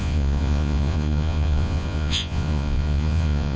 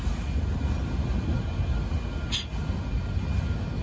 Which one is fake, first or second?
first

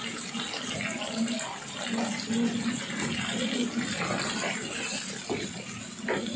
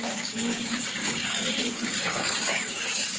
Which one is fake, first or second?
second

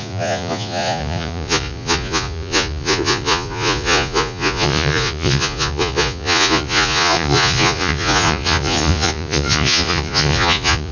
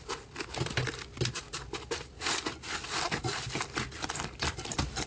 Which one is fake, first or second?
first